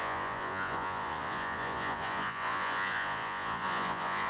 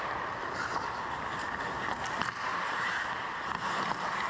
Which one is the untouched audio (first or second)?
second